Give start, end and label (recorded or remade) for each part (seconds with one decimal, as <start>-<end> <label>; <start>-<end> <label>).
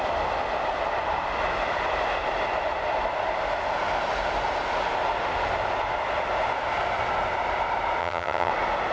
0.0-8.0 recorded; 8.0-8.5 remade; 8.5-8.9 recorded